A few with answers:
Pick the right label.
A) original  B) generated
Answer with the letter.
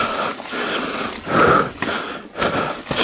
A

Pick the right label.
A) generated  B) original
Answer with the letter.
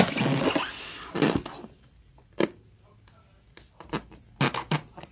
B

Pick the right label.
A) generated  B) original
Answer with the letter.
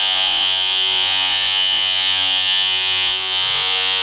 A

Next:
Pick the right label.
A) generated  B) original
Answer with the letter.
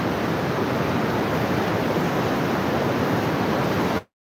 B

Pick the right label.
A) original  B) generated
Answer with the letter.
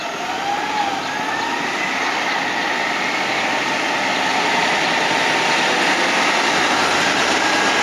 A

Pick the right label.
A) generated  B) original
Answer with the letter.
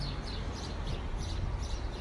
B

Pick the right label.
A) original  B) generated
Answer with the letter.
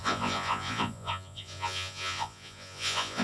B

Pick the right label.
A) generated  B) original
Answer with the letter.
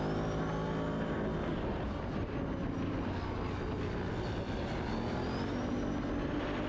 B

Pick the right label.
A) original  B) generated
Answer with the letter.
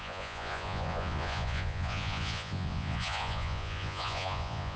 B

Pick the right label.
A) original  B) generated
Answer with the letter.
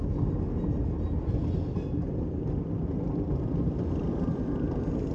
A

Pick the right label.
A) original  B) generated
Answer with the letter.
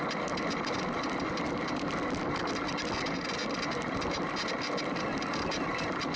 A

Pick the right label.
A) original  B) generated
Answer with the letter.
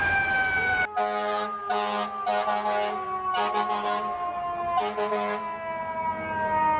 A